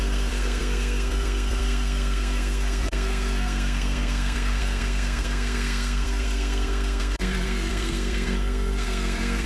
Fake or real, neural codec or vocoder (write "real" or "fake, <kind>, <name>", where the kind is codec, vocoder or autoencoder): fake, codec, SNAC